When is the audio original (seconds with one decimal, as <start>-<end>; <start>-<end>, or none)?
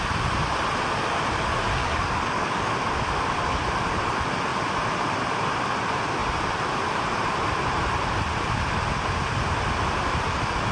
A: 0.0-1.8; 2.7-10.7